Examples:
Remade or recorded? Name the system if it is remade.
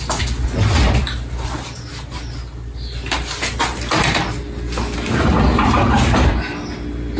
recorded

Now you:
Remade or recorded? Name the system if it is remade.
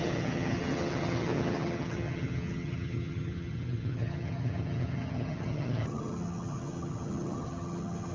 remade, vocoder, HiFi-GAN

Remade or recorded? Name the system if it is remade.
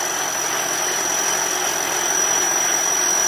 recorded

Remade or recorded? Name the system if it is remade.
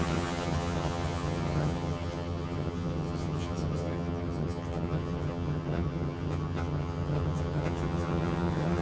remade, vocoder, HiFi-GAN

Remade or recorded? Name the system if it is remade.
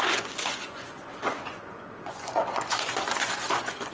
remade, vocoder, Vocos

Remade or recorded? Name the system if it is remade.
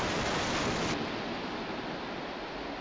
recorded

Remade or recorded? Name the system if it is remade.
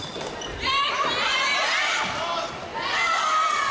recorded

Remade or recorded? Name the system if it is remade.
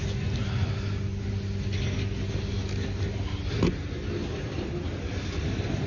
recorded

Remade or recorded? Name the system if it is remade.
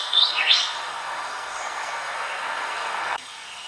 remade, codec, SNAC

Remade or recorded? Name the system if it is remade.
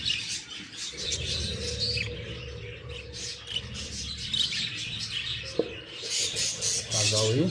recorded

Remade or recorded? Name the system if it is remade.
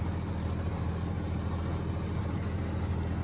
recorded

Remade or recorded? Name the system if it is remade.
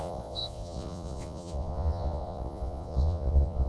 remade, vocoder, Vocos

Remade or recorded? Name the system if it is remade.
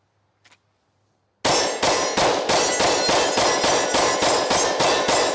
recorded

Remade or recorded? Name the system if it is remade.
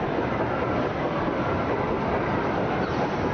recorded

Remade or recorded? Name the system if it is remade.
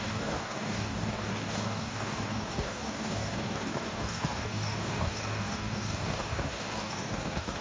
remade, codec, DAC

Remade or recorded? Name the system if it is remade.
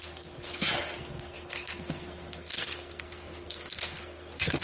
remade, codec, SNAC